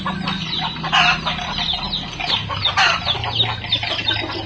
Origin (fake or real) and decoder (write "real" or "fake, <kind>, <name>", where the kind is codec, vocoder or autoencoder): real